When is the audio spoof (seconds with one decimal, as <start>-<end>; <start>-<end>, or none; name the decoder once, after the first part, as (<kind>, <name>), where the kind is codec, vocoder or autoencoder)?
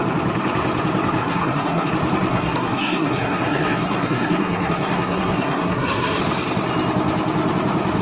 1.2-1.9 (codec, SNAC); 2.3-6.2